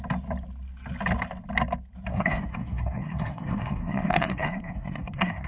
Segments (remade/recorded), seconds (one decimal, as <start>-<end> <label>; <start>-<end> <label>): 0.0-2.1 recorded; 2.1-5.5 remade